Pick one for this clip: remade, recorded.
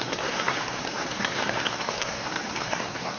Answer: remade